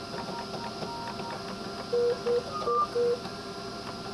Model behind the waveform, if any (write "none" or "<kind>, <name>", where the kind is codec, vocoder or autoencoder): none